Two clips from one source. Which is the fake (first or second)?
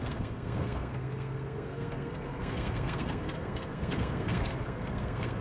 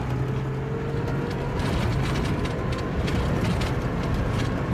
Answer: first